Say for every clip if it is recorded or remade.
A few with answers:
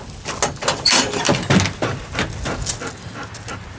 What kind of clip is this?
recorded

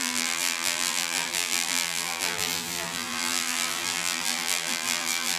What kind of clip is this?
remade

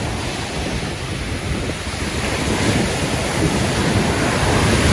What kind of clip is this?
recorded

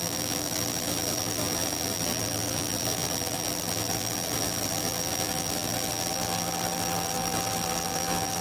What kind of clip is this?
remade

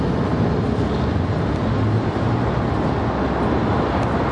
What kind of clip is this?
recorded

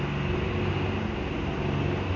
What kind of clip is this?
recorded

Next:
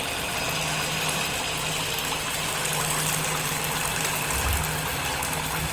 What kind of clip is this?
recorded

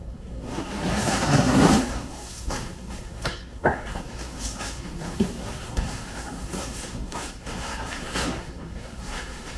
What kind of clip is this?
remade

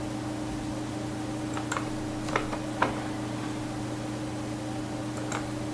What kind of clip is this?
recorded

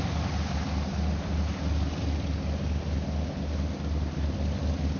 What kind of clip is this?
recorded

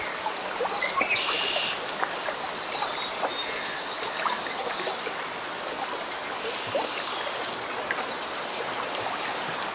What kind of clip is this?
recorded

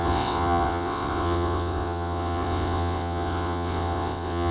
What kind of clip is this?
remade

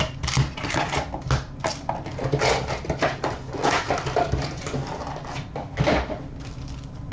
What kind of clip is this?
recorded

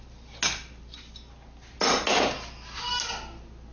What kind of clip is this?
recorded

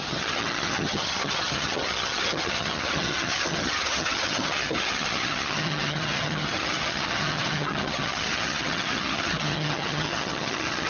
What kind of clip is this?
remade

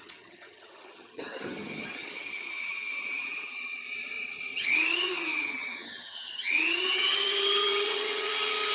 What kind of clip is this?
remade